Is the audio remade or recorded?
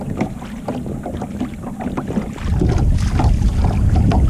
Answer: recorded